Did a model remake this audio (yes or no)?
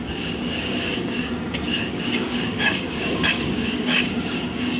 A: yes